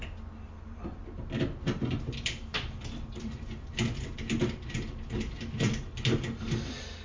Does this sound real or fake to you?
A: fake